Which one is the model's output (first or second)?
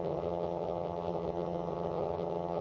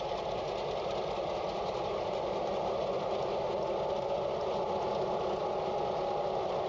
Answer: first